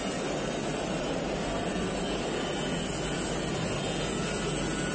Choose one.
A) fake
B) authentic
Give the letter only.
B